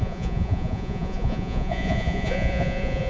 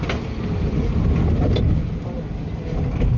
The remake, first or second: first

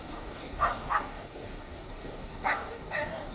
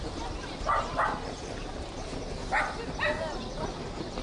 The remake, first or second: first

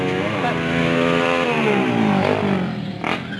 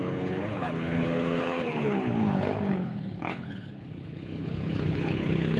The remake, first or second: second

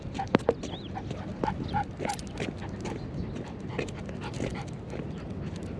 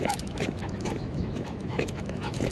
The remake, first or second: second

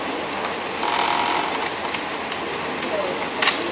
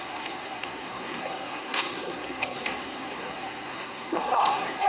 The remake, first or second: second